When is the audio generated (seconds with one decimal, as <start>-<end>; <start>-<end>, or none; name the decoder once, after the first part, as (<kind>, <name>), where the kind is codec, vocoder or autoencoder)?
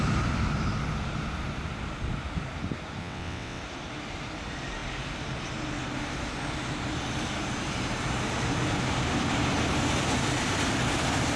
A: 3.0-3.6 (vocoder, WaveNeXt)